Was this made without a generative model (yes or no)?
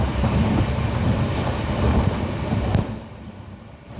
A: no